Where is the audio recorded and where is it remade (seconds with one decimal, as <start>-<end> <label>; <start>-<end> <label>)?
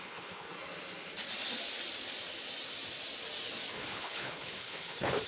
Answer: 0.0-0.5 remade; 0.5-3.7 recorded; 3.7-5.3 remade